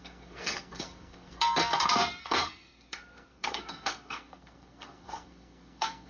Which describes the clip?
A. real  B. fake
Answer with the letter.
B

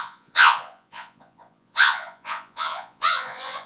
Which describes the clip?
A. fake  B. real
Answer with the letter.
A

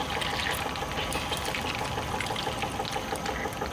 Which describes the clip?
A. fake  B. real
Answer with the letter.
B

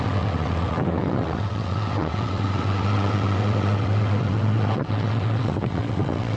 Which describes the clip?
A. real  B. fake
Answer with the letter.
B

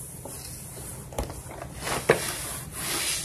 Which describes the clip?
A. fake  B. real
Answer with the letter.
B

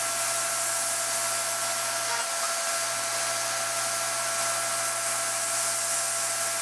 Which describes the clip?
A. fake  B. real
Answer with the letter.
B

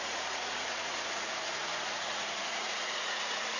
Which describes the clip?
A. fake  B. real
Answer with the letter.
A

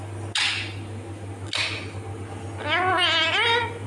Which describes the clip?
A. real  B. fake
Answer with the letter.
A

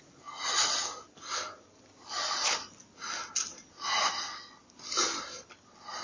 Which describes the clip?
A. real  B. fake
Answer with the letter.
A